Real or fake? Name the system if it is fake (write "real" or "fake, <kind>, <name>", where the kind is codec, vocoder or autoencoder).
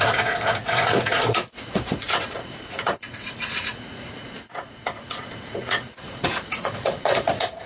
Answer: fake, vocoder, Vocos